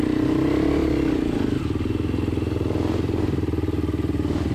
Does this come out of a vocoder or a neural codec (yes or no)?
no